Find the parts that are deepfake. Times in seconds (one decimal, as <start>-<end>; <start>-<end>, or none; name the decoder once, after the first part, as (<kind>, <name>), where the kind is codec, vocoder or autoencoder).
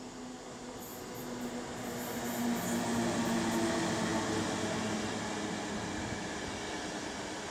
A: none